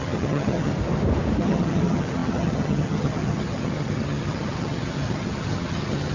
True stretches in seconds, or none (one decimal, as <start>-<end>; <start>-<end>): 0.7-1.4